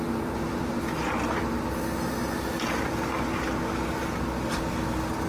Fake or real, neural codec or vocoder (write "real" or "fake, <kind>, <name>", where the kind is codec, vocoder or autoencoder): real